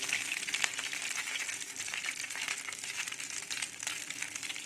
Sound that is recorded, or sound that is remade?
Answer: recorded